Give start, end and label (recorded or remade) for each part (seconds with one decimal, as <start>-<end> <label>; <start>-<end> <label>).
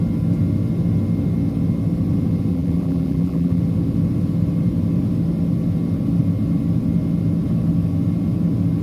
0.0-2.5 recorded; 2.5-3.6 remade; 3.6-8.8 recorded